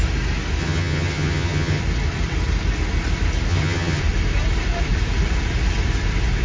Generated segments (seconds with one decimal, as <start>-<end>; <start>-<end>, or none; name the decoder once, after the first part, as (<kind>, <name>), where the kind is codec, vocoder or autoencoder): 0.6-1.8 (vocoder, HiFi-GAN); 3.5-4.0